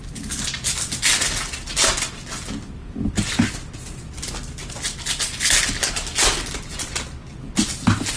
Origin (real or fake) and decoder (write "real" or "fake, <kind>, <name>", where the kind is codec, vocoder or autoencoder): real